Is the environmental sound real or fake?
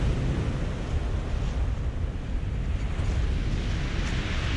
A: real